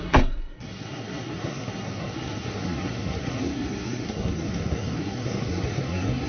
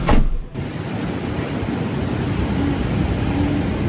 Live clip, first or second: second